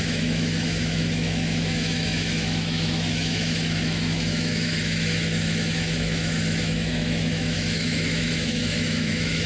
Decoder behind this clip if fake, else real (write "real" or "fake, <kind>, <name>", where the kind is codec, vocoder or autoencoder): fake, autoencoder, DAC-VAE